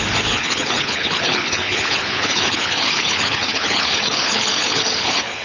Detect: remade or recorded remade